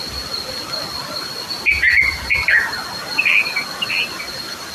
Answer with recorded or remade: recorded